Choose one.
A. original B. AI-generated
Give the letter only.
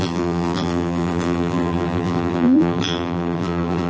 B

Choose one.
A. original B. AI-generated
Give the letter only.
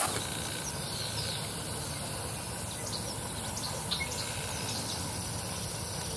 A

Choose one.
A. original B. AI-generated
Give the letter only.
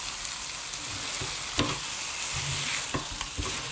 A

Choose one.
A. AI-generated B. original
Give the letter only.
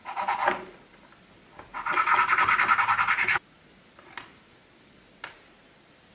B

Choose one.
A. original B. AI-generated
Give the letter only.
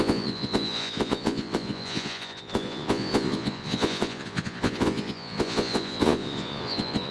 B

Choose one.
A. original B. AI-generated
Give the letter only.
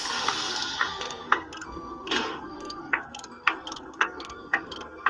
B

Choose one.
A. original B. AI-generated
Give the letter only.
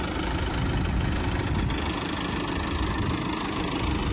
A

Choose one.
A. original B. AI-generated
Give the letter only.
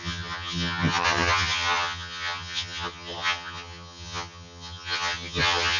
B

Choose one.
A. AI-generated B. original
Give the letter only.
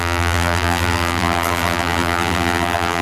A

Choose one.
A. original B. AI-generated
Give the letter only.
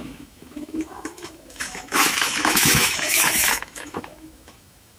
B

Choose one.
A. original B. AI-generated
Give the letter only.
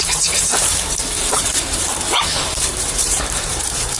B